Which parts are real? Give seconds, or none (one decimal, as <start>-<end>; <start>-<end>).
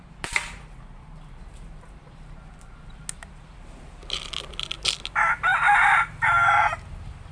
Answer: 0.0-7.3